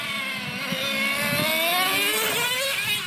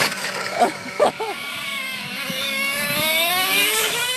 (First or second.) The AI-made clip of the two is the second